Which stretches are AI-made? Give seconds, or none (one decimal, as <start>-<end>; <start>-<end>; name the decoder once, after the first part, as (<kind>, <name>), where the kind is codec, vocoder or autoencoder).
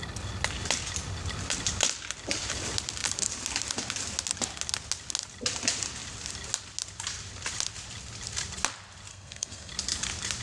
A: 9.1-9.7 (codec, SNAC)